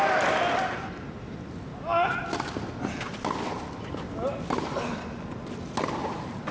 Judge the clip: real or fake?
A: real